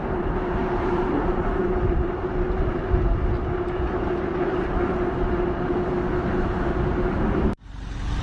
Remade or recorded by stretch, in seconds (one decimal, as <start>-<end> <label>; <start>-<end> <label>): 0.0-2.2 remade; 2.2-7.1 recorded; 7.1-8.2 remade